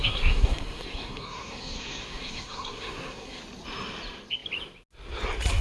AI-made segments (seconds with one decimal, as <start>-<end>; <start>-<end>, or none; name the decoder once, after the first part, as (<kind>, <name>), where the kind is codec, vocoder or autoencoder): 0.0-3.4 (codec, SNAC)